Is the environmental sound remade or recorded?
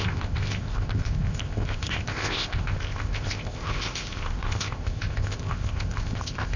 remade